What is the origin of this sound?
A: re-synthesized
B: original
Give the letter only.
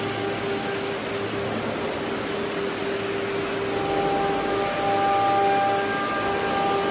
B